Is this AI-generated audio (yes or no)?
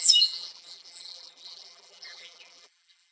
yes